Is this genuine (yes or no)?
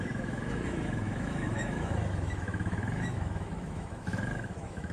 no